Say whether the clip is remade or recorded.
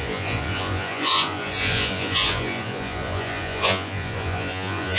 remade